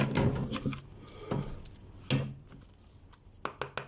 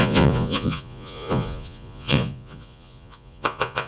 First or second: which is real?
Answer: first